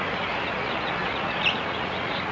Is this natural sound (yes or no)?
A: no